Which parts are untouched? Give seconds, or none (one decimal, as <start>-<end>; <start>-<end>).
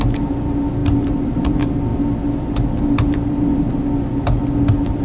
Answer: 0.0-5.0